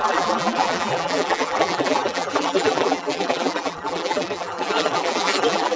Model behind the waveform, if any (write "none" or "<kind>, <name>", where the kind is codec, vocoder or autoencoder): vocoder, BigVGAN v2